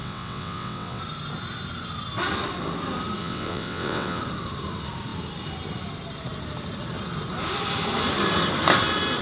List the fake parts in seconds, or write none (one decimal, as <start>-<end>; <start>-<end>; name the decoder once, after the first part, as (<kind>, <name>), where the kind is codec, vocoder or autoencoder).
0.0-1.0 (vocoder, WaveNeXt); 3.2-4.2